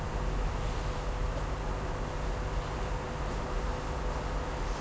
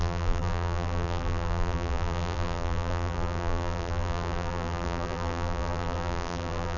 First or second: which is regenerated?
second